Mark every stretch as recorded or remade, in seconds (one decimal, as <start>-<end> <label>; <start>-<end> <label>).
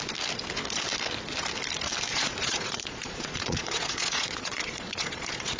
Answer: 0.0-2.1 recorded; 2.1-5.6 remade